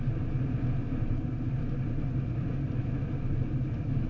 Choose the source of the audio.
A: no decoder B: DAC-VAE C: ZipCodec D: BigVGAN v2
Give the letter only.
A